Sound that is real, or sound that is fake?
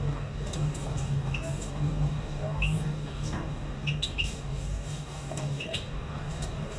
fake